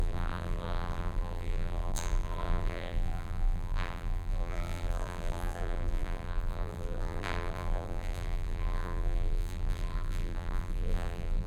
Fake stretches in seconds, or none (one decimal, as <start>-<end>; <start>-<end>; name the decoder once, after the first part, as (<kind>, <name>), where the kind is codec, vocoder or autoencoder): 0.0-11.5 (vocoder, BigVGAN v2)